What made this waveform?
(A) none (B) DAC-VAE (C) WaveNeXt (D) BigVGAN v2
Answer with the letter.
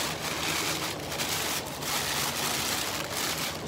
A